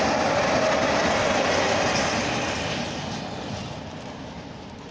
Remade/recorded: recorded